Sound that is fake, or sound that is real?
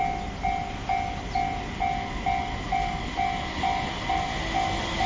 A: real